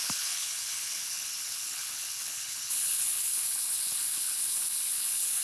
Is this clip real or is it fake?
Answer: fake